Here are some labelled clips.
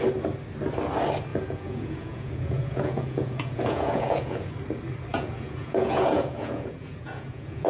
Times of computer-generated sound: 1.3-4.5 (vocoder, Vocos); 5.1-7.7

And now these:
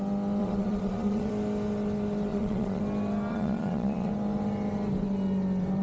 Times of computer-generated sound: 0.4-1.3 (vocoder, Vocos); 2.3-2.8; 3.3-4.1

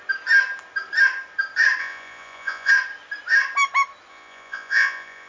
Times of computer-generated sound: 1.8-2.7 (vocoder, Vocos); 4.1-5.3

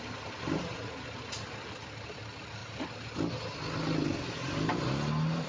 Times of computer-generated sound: none

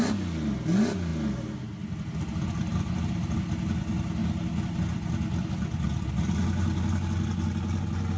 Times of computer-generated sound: none

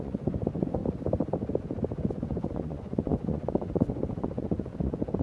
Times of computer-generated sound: 0.0-0.8 (vocoder, Vocos); 2.1-5.2

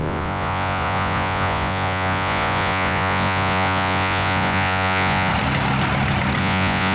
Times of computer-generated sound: 0.0-5.3 (vocoder, Vocos); 6.4-6.9